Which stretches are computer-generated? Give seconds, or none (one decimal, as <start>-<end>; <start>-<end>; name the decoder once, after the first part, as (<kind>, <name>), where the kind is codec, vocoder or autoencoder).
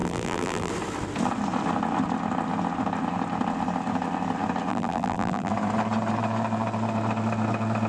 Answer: 0.0-0.7 (vocoder, BigVGAN v2); 4.7-5.5